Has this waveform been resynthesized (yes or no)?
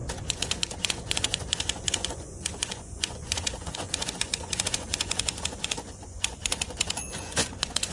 yes